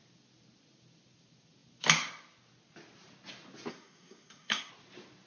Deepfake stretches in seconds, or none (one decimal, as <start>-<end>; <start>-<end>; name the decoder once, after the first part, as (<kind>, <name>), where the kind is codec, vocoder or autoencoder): 3.7-4.7 (codec, SNAC)